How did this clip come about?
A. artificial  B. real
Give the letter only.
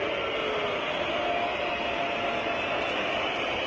B